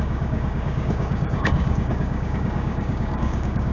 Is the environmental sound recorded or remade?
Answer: remade